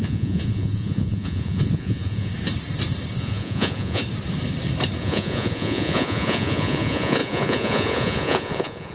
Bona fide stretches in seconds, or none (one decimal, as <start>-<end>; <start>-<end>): 2.3-3.2; 4.0-5.0